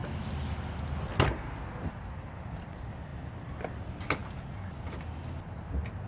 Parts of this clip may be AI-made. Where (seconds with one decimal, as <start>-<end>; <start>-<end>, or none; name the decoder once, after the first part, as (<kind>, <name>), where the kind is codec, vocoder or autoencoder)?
none